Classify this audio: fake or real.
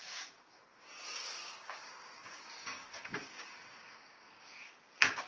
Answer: fake